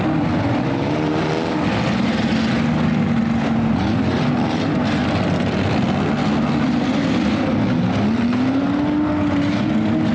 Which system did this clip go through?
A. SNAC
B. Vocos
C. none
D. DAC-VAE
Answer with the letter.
C